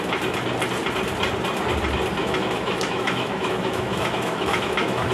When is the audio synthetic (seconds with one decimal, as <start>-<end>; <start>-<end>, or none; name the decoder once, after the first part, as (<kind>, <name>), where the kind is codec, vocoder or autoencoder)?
2.2-5.1 (autoencoder, DAC-VAE)